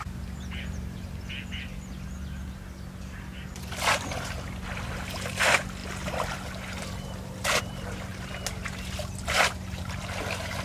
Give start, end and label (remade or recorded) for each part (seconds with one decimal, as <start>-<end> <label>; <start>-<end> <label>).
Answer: 0.0-10.6 recorded

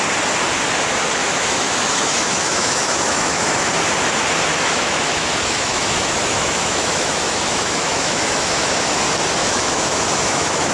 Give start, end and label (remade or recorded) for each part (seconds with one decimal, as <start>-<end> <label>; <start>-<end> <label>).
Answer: 0.0-1.2 recorded; 1.2-3.7 remade; 3.7-4.5 recorded; 4.5-9.0 remade; 9.0-9.4 recorded; 9.4-10.7 remade

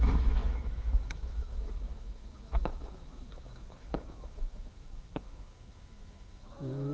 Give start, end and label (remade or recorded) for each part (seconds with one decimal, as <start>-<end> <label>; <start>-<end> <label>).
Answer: 0.0-6.9 remade

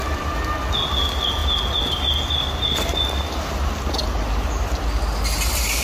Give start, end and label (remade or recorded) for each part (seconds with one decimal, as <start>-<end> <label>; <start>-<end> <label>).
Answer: 0.0-5.8 recorded

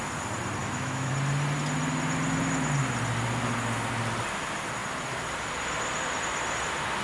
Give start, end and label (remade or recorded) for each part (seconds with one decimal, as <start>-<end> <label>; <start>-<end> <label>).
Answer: 0.0-0.6 recorded; 0.6-1.1 remade; 1.1-7.0 recorded

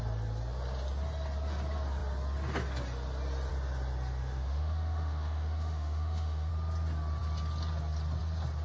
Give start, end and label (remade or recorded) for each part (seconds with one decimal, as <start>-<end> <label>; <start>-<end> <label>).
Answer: 0.0-4.2 recorded; 4.2-6.5 remade; 6.5-8.6 recorded